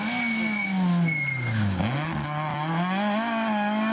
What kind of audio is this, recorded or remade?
recorded